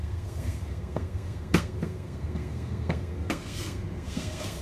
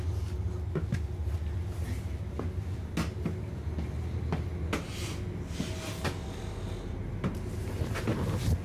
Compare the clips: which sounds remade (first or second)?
first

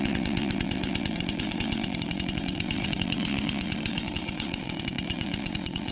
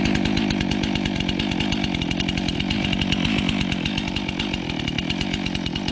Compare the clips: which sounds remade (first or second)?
first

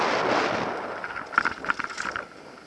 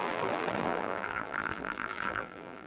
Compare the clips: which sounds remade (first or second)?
second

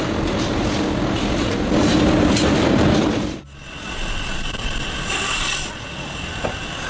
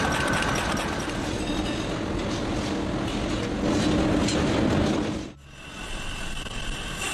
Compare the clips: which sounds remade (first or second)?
first